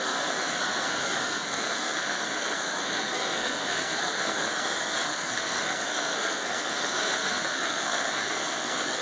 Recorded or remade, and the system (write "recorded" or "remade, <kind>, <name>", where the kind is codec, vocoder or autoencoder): remade, codec, SNAC